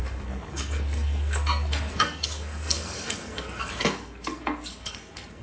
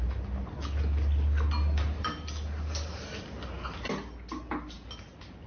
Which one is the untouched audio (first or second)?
second